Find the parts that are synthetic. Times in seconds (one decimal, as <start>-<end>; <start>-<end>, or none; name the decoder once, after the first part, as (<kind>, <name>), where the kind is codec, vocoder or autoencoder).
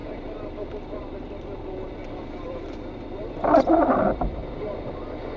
0.0-4.4 (vocoder, BigVGAN v2)